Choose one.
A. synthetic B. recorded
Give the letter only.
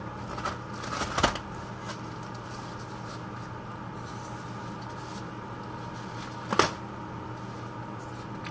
B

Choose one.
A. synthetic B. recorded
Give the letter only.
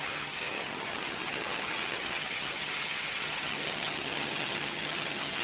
A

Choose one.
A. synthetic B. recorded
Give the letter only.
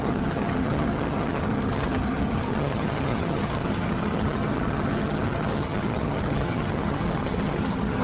A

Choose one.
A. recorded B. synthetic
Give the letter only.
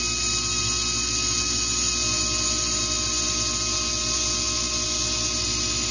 A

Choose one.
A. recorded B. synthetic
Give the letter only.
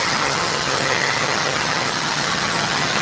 B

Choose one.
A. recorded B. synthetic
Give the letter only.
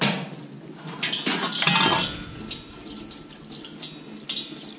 A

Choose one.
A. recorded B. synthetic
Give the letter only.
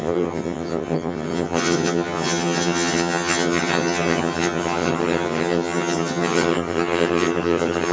B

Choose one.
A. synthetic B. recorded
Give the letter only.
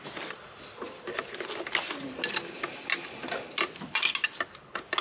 B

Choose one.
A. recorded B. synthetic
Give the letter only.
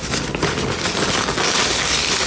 A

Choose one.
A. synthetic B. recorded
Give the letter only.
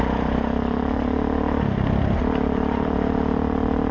B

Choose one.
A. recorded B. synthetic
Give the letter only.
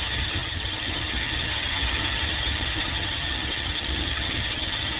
B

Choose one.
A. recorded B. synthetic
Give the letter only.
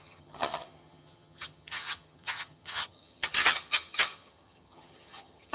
B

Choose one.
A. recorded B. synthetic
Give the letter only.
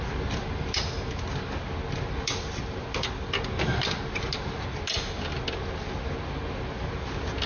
A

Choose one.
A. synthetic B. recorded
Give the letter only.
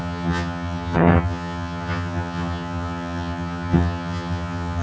A